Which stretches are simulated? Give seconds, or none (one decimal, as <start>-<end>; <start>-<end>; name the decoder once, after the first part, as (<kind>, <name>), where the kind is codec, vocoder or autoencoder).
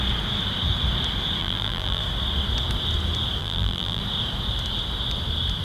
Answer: 1.4-2.0 (vocoder, BigVGAN v2); 3.4-4.0